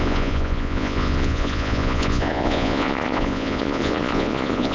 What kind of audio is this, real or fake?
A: fake